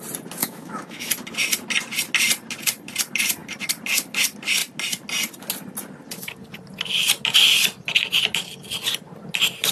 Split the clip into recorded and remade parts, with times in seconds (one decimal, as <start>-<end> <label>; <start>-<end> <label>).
0.0-0.4 recorded; 0.4-1.1 remade; 1.1-9.7 recorded